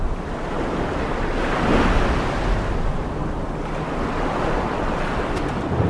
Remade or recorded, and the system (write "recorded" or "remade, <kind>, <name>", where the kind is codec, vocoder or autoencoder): recorded